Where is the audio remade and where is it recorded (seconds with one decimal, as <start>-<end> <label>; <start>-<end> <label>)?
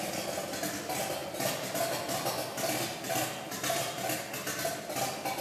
0.0-5.4 recorded